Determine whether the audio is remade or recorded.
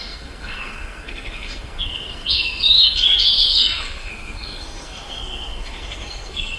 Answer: remade